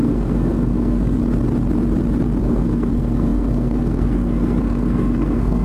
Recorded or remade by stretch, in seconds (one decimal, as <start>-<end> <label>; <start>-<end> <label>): 0.0-1.2 remade; 1.2-2.4 recorded; 2.4-5.6 remade